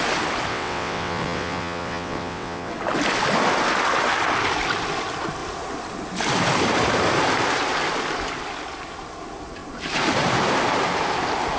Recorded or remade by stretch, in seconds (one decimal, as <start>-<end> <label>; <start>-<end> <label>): 0.0-0.5 recorded; 0.5-2.7 remade; 2.7-11.6 recorded